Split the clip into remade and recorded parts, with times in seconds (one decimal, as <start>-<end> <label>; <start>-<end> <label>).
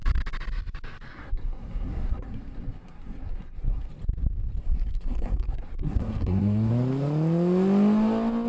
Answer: 0.0-1.1 recorded; 1.1-3.9 remade; 3.9-4.6 recorded; 4.6-6.7 remade; 6.7-8.5 recorded